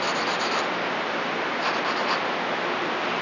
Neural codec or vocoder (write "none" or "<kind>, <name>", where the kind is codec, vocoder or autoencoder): none